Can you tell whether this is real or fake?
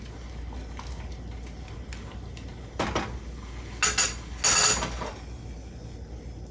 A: real